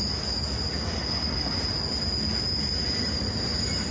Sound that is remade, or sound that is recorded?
recorded